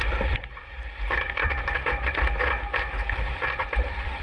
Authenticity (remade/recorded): remade